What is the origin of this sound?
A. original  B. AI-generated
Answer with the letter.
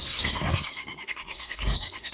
B